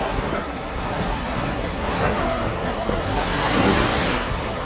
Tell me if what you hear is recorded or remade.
remade